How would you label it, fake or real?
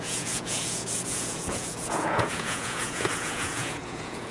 fake